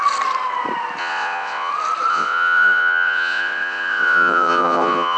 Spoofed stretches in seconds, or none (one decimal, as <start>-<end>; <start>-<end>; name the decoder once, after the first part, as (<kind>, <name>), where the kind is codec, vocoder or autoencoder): 1.0-1.7 (vocoder, WaveNeXt); 2.1-5.2